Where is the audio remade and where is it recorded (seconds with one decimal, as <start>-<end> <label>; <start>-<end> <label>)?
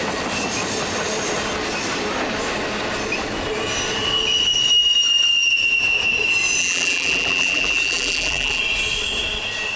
0.0-6.6 recorded; 6.6-8.6 remade; 8.6-9.8 recorded